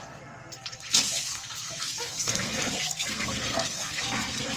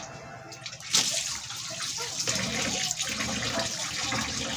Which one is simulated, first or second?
first